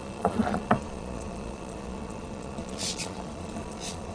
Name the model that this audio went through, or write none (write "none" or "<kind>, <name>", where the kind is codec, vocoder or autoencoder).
vocoder, Vocos